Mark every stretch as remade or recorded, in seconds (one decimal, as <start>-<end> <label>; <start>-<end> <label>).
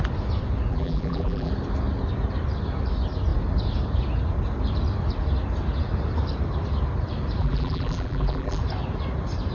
0.0-0.7 recorded; 0.7-1.5 remade; 1.5-7.4 recorded; 7.4-8.6 remade; 8.6-9.5 recorded